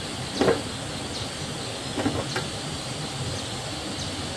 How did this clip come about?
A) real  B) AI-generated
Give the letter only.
A